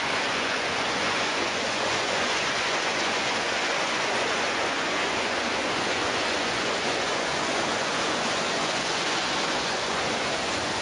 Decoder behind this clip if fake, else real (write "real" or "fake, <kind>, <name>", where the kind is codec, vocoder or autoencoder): fake, vocoder, Vocos